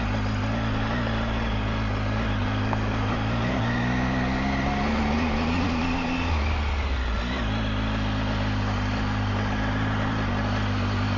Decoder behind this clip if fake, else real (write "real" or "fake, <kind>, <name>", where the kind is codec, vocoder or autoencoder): real